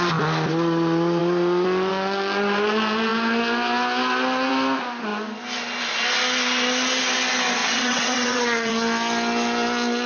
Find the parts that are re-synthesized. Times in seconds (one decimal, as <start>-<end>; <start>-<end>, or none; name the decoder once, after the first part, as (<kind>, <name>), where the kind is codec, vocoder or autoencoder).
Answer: 7.6-8.7 (vocoder, WaveNeXt)